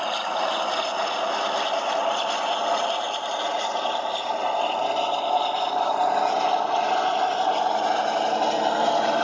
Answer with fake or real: real